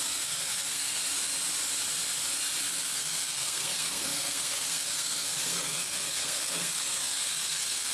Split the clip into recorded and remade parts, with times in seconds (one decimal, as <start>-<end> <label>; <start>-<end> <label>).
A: 0.0-1.0 remade; 1.0-2.6 recorded; 2.6-7.9 remade